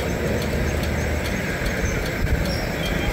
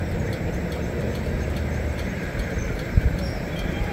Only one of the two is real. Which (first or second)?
first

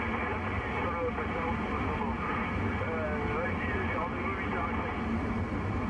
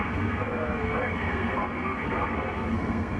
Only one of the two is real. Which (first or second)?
first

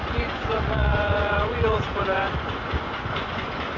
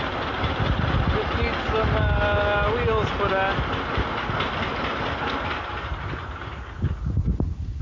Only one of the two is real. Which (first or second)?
second